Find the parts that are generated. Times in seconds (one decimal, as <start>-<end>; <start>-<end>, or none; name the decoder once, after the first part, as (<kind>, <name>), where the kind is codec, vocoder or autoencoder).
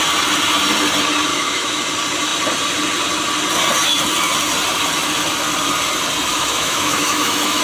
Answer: 1.3-1.8 (autoencoder, DAC-VAE); 6.3-7.6